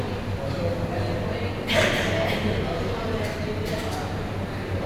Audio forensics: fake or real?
real